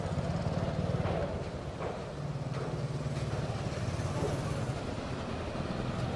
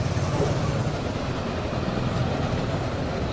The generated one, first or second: second